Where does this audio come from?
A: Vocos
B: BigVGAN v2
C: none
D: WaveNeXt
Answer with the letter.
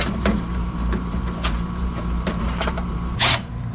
B